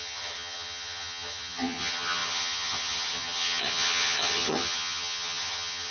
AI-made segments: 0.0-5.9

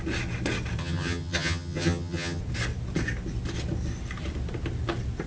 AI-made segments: 0.8-2.4

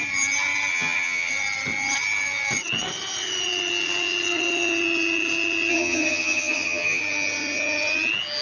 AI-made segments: 0.7-1.3; 5.7-7.0

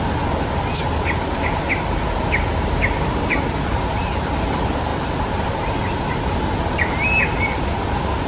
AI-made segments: none

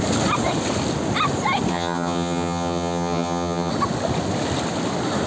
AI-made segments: 1.7-3.7

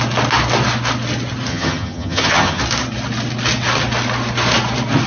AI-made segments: 1.5-2.6